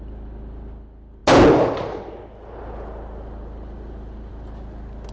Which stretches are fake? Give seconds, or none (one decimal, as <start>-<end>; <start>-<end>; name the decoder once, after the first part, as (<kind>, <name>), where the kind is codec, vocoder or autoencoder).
none